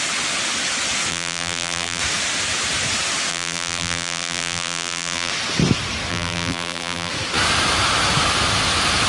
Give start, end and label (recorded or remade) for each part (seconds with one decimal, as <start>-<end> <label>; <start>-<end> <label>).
0.0-1.1 recorded; 1.1-2.0 remade; 2.0-3.3 recorded; 3.3-5.3 remade; 5.3-6.1 recorded; 6.1-7.1 remade; 7.1-9.1 recorded